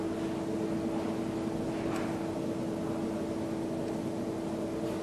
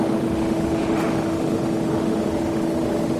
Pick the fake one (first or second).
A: second